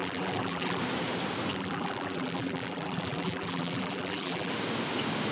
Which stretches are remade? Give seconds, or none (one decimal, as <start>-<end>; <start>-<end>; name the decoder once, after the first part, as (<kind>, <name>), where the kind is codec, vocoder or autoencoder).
0.0-0.8 (vocoder, BigVGAN v2); 1.5-4.5